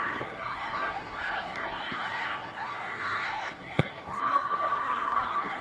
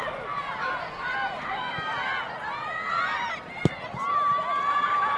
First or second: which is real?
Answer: second